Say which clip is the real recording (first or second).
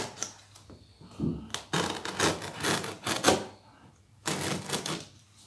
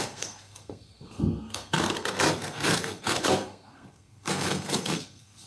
first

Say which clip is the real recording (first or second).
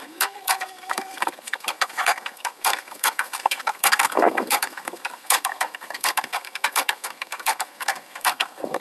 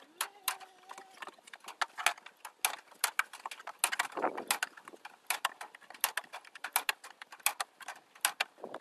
second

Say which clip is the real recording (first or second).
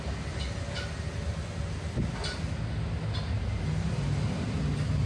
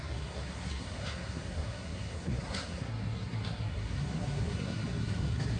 first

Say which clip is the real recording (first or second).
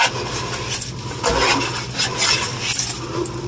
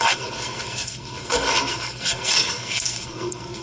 first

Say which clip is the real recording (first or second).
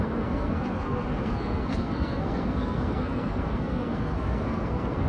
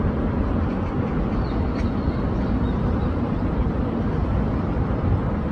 second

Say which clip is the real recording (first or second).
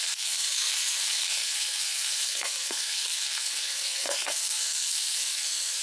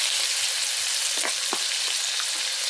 second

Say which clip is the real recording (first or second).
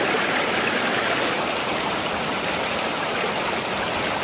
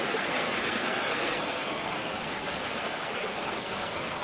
first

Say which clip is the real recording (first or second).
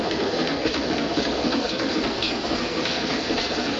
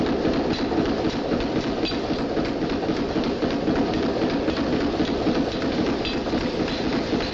second